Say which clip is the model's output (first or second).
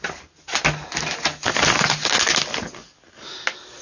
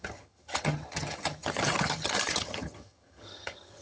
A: second